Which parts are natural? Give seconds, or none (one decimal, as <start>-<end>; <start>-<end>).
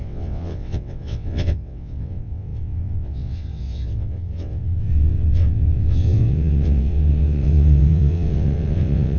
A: none